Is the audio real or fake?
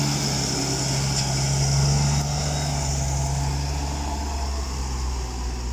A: real